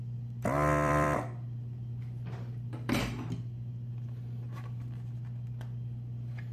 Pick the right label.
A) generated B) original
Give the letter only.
A